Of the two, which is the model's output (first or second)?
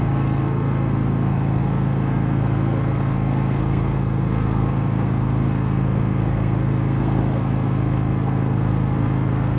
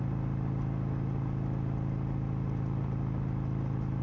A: first